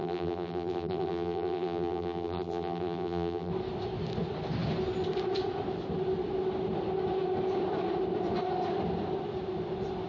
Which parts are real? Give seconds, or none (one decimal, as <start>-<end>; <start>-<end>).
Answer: 3.5-10.1